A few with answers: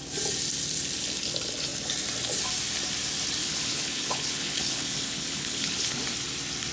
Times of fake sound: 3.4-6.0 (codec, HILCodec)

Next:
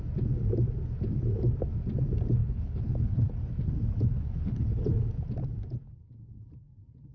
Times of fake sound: 2.4-3.4 (codec, HILCodec); 4.2-4.8

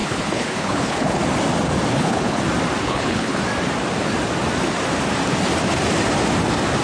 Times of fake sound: 0.0-1.2 (codec, HILCodec); 1.9-2.4; 2.8-3.4

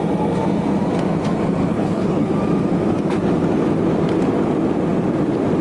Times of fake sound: 1.7-2.3 (codec, HILCodec)